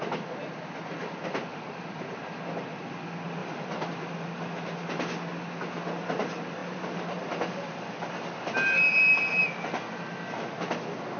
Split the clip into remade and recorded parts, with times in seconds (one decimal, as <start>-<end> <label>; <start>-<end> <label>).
0.0-1.5 recorded; 1.5-2.2 remade; 2.2-3.4 recorded; 3.4-4.3 remade; 4.3-6.6 recorded; 6.6-8.1 remade; 8.1-11.2 recorded